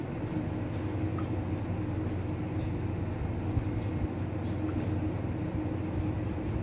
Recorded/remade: recorded